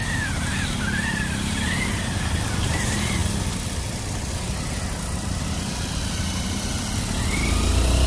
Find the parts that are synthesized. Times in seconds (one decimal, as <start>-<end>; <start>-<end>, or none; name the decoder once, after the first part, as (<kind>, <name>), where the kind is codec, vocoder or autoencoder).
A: none